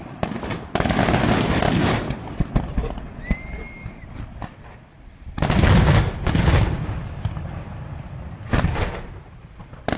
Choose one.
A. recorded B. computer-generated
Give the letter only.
A